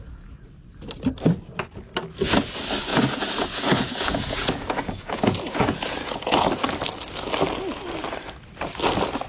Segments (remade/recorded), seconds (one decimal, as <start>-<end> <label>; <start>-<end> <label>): 0.0-2.9 recorded; 2.9-6.5 remade; 6.5-9.3 recorded